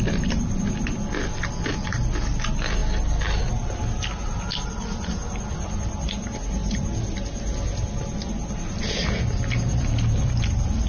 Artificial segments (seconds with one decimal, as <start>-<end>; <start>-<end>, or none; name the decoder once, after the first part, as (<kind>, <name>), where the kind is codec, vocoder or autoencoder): none